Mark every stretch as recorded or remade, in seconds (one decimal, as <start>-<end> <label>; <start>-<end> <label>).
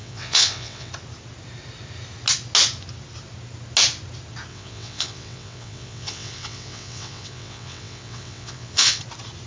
0.0-0.9 remade; 0.9-4.5 recorded; 4.5-9.0 remade; 9.0-9.5 recorded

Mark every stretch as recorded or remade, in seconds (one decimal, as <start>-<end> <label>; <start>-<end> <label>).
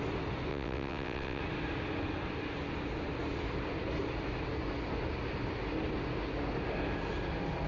0.0-0.5 recorded; 0.5-1.4 remade; 1.4-7.7 recorded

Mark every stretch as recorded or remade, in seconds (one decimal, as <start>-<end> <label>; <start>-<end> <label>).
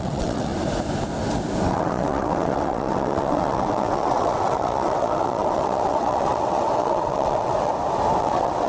0.0-0.5 remade; 0.5-1.7 recorded; 1.7-7.7 remade; 7.7-8.2 recorded; 8.2-8.7 remade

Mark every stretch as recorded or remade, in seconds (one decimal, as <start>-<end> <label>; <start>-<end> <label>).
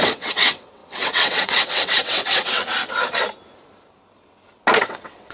0.0-2.6 remade; 2.6-4.8 recorded; 4.8-5.3 remade